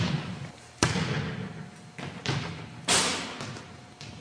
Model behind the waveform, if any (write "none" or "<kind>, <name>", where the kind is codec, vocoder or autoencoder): none